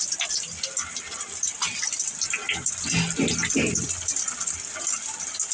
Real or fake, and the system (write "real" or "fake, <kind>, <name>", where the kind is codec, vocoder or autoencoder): real